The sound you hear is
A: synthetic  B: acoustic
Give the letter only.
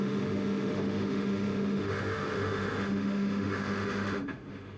A